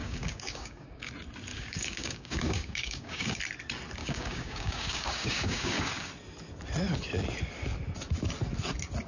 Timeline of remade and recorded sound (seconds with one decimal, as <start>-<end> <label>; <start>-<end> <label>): 0.0-1.1 remade; 1.1-1.5 recorded; 1.5-3.4 remade; 3.4-4.0 recorded; 4.0-6.1 remade; 6.1-9.1 recorded